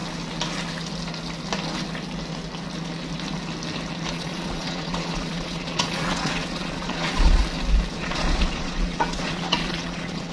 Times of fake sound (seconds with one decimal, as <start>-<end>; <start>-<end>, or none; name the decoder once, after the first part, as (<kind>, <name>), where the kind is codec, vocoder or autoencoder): 4.1-7.4 (vocoder, Vocos); 7.9-10.3